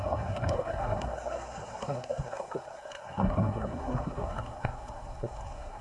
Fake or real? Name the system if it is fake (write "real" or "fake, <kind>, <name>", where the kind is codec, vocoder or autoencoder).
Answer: fake, codec, SNAC